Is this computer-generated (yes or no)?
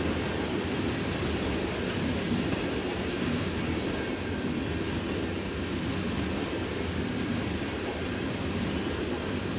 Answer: no